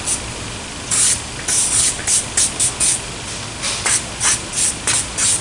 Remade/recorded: recorded